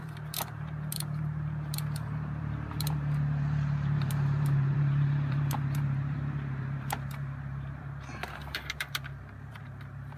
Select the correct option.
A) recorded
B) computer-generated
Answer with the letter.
B